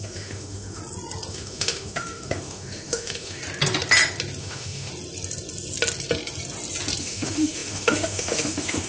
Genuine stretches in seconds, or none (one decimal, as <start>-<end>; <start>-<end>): 0.8-1.3; 3.4-4.4; 4.9-7.0